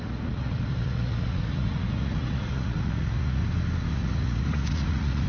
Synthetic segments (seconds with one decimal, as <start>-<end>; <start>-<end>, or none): 0.0-3.4; 3.9-5.3